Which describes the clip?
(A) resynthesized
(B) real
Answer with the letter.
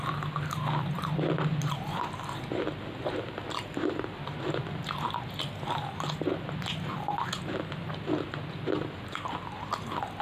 B